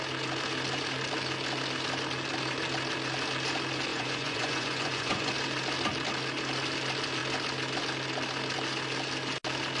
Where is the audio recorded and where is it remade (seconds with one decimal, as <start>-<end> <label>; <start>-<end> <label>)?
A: 0.0-3.9 recorded; 3.9-5.3 remade; 5.3-9.8 recorded

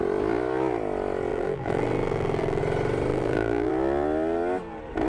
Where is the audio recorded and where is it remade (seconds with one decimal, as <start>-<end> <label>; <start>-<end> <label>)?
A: 0.0-1.3 recorded; 1.3-2.6 remade; 2.6-3.1 recorded; 3.1-3.7 remade; 3.7-5.1 recorded

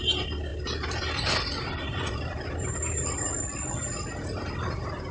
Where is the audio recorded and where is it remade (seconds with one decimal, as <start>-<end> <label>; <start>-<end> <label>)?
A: 0.0-0.5 recorded; 0.5-3.3 remade; 3.3-5.1 recorded